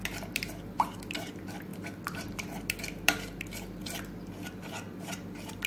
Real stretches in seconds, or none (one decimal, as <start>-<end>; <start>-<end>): none